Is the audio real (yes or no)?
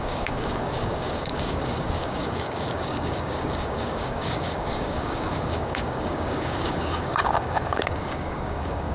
no